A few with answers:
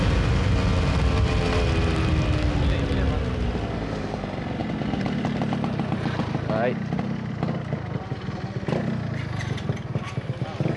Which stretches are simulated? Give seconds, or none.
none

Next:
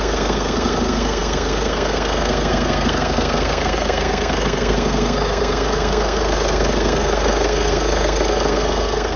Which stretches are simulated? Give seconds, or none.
0.0-9.2 (codec, SNAC)

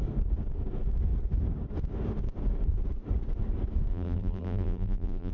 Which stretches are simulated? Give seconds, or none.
3.9-5.3 (vocoder, BigVGAN v2)

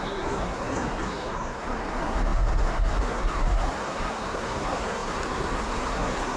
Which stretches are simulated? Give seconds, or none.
0.0-6.4 (codec, SNAC)